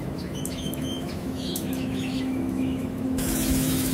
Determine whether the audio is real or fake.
fake